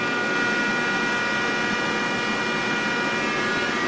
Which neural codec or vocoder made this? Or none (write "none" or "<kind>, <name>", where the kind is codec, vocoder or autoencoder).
none